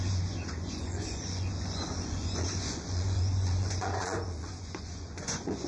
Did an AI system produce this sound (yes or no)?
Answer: yes